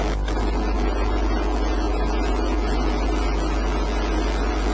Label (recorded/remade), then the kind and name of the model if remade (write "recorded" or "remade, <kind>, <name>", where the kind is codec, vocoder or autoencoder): recorded